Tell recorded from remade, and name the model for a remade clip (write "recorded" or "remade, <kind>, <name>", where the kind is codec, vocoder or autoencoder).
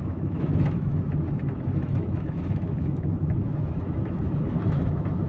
remade, autoencoder, DAC-VAE